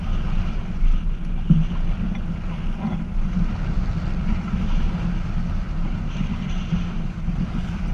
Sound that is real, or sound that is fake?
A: real